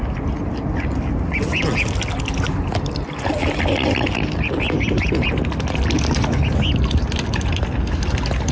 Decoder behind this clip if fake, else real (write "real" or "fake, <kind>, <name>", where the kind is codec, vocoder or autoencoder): real